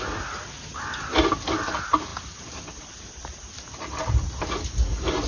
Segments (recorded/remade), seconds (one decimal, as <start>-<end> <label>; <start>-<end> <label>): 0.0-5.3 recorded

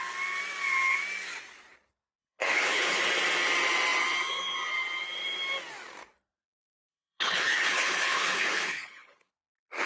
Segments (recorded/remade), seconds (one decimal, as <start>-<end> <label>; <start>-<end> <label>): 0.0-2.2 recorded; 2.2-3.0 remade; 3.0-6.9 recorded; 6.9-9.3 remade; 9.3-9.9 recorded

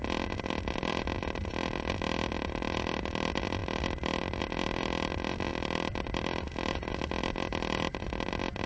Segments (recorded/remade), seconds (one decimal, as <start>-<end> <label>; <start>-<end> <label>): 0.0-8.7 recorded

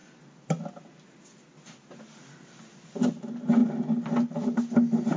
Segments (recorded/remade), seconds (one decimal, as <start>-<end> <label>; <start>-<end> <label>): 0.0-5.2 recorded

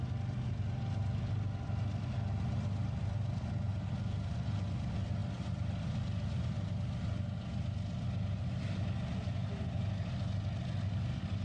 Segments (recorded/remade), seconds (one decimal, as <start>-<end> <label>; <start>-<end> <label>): 0.0-11.4 recorded

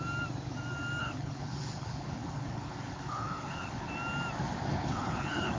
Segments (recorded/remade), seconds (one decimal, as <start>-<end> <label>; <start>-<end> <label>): 0.0-1.0 recorded; 1.0-3.9 remade; 3.9-4.7 recorded; 4.7-5.6 remade

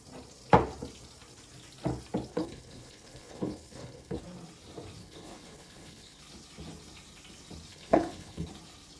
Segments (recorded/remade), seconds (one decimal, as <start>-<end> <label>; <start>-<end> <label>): 0.0-2.3 recorded; 2.3-4.2 remade; 4.2-5.0 recorded; 5.0-6.2 remade; 6.2-7.7 recorded; 7.7-8.5 remade; 8.5-9.0 recorded

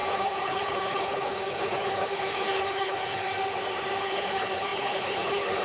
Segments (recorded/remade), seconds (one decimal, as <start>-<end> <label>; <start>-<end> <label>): 0.0-3.3 remade; 3.3-4.0 recorded; 4.0-5.6 remade